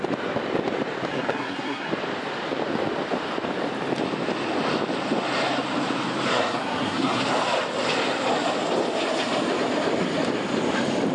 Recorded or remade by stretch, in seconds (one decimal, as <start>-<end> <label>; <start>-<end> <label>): 0.0-1.1 recorded; 1.1-1.9 remade; 1.9-6.3 recorded; 6.3-7.2 remade; 7.2-11.1 recorded